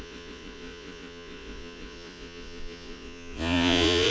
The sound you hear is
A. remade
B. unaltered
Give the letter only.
A